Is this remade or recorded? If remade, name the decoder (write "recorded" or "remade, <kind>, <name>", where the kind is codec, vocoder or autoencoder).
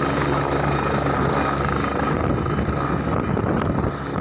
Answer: recorded